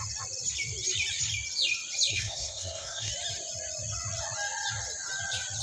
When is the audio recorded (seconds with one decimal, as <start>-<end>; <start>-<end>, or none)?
0.0-2.1; 3.1-5.6